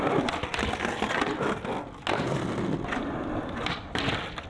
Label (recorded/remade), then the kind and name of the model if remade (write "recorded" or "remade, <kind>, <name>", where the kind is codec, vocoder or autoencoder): recorded